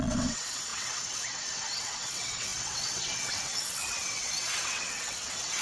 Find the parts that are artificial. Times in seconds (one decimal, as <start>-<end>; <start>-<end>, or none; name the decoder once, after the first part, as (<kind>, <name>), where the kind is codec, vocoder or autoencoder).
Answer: 0.0-5.6 (vocoder, WaveNeXt)